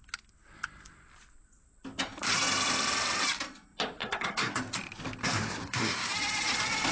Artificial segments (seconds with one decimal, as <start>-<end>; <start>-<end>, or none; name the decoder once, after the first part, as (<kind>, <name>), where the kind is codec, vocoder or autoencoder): 4.0-4.5 (codec, SNAC); 5.2-6.1